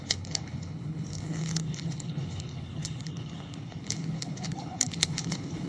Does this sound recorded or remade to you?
remade